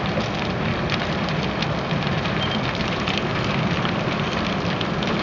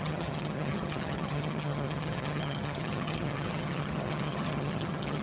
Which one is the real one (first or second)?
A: first